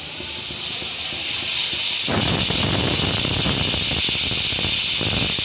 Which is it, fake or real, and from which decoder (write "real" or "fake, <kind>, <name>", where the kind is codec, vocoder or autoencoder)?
real